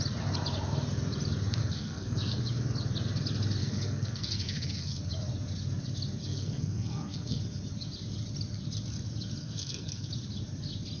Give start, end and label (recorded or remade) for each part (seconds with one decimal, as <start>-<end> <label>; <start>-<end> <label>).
0.0-1.6 recorded; 1.6-2.4 remade; 2.4-3.6 recorded; 3.6-5.0 remade; 5.0-6.2 recorded; 6.2-7.4 remade; 7.4-9.4 recorded; 9.4-10.1 remade; 10.1-11.0 recorded